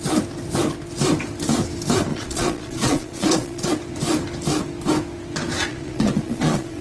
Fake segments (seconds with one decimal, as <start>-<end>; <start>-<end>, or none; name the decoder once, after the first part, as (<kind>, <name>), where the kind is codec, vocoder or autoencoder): 2.1-3.7 (vocoder, Vocos); 5.7-6.8